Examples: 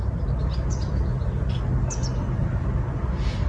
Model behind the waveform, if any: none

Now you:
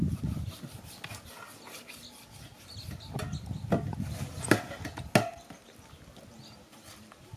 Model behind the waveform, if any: none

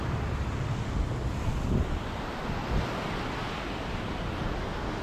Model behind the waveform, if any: none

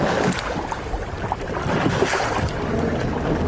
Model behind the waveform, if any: none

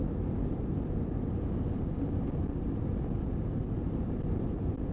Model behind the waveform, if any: none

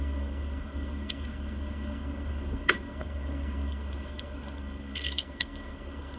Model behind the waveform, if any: codec, SNAC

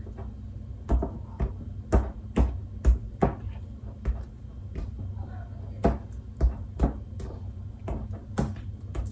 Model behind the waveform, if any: none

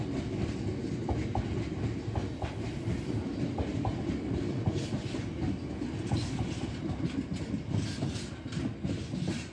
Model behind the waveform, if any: none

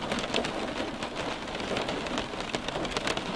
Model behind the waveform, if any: none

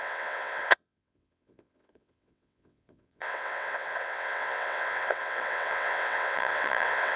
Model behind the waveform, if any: vocoder, WaveNeXt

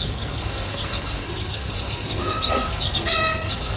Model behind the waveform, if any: codec, SNAC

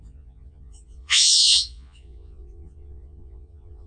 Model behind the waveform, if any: vocoder, Vocos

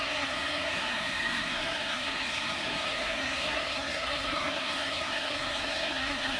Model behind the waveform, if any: codec, SNAC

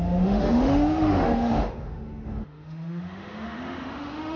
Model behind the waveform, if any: autoencoder, DAC-VAE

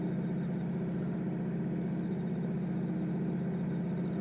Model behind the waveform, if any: none